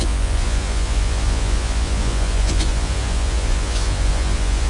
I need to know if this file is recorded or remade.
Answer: remade